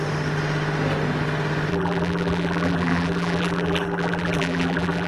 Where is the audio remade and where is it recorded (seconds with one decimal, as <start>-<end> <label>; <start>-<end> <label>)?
0.0-1.7 recorded; 1.7-5.1 remade